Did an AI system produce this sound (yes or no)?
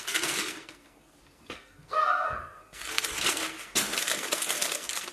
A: yes